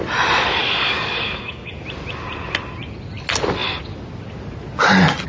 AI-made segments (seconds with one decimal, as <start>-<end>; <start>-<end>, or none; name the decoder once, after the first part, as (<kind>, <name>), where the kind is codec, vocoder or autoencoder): 0.6-1.7 (codec, DAC)